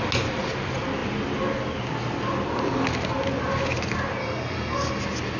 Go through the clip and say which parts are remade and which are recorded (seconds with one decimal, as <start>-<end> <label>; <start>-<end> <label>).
0.0-4.2 recorded; 4.2-5.0 remade; 5.0-5.4 recorded